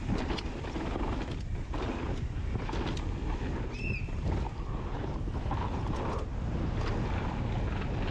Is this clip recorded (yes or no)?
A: yes